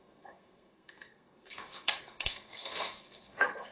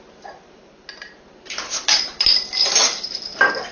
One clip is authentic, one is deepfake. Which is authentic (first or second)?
second